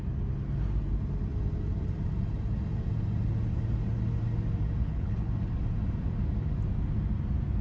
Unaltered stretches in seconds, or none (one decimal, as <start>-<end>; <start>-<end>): 0.0-4.8; 5.3-7.6